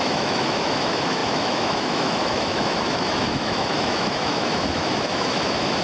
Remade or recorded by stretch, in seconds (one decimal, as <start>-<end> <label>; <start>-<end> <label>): 0.0-5.8 remade